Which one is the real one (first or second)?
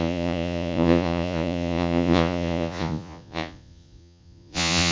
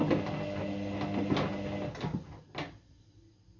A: second